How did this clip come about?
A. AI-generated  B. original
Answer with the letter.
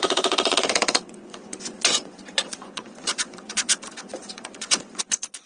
A